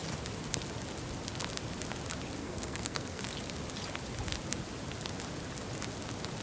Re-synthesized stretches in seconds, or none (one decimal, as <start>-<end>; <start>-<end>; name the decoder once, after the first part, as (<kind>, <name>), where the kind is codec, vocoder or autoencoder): 2.4-3.2 (codec, SNAC)